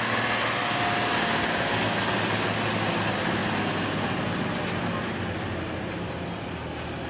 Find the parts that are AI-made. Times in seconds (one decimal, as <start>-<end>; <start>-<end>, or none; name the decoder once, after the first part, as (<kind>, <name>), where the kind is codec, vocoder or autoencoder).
none